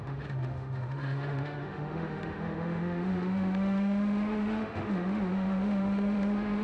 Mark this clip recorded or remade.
remade